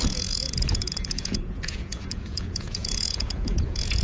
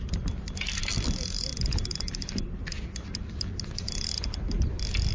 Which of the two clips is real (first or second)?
second